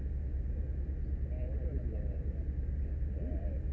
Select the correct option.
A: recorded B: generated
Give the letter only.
A